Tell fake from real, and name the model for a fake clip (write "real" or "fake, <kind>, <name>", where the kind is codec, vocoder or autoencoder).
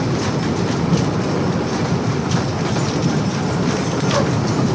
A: real